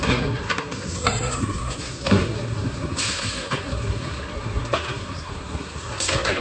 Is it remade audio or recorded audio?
remade